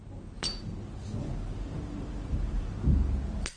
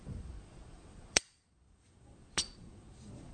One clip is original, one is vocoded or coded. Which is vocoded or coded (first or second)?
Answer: second